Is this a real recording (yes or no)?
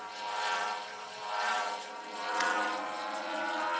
no